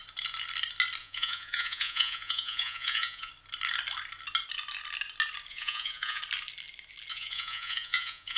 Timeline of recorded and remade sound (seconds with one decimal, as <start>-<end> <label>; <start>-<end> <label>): 0.0-1.0 recorded; 1.0-3.3 remade; 3.3-5.5 recorded; 5.5-6.2 remade; 6.2-7.1 recorded; 7.1-8.4 remade